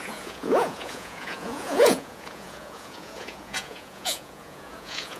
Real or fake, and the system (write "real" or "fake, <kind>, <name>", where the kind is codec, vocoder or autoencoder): fake, vocoder, Vocos